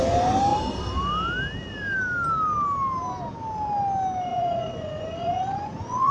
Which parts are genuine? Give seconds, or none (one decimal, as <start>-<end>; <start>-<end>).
0.0-4.3